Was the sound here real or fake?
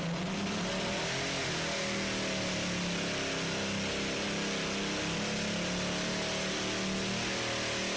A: real